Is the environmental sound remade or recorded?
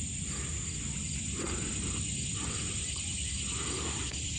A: recorded